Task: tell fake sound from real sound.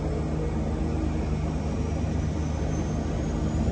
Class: real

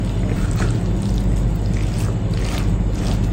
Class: real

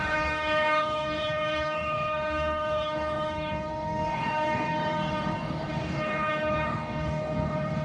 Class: fake